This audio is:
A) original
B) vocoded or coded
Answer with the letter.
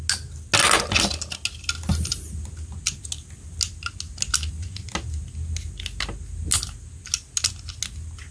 A